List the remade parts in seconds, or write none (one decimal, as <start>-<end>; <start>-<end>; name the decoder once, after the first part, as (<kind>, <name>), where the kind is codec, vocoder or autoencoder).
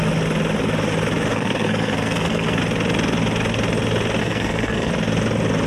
1.3-2.6 (codec, SNAC); 4.2-4.9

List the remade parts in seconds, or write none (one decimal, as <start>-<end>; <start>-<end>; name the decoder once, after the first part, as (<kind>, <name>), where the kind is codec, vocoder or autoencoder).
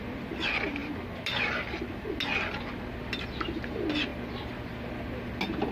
none